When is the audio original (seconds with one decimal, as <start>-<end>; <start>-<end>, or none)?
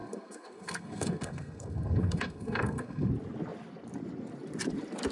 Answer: 3.1-5.1